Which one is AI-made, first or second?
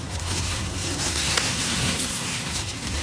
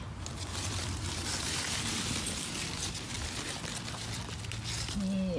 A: first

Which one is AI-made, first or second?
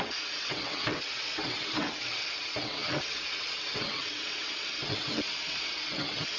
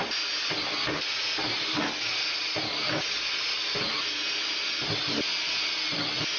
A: first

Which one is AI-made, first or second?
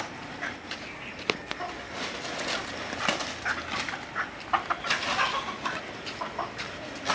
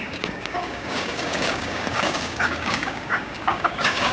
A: second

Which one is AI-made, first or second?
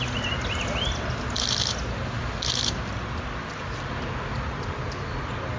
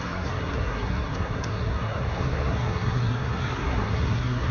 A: second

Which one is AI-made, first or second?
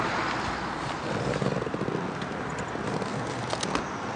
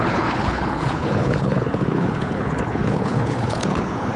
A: second